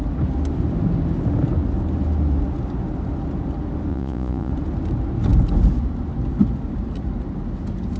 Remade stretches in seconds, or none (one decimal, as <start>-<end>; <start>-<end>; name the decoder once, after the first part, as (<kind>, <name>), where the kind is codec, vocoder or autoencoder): 3.9-4.5 (vocoder, Vocos)